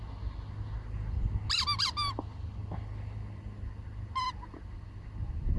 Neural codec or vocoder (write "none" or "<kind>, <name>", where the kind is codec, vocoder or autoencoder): none